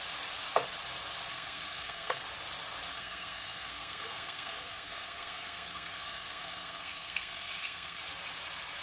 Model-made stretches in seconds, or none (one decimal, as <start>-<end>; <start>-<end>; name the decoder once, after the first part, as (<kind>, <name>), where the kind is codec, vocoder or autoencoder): 1.3-2.2 (codec, SNAC); 2.9-8.0